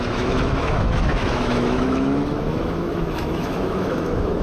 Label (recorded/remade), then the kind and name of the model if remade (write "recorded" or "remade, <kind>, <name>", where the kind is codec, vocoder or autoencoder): remade, autoencoder, DAC-VAE